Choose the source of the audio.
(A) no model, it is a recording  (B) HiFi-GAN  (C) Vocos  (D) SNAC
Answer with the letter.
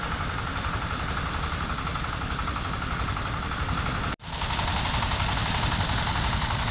A